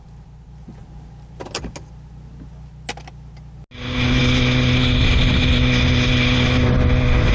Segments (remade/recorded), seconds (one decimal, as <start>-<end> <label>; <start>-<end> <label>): 0.0-7.3 recorded